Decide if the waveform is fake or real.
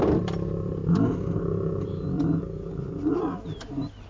real